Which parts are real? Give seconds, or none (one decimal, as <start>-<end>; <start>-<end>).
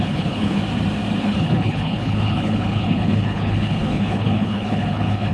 0.6-1.2